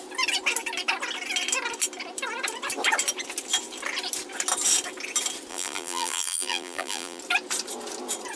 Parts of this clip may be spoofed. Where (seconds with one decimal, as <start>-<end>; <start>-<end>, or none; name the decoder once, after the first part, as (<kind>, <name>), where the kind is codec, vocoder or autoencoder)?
5.5-7.2 (vocoder, BigVGAN v2)